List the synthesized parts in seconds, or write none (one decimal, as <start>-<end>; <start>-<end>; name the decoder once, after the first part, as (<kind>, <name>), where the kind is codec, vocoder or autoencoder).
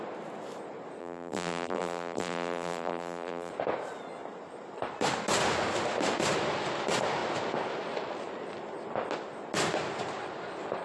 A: 1.0-3.5 (vocoder, BigVGAN v2)